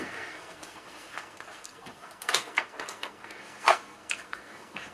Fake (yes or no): yes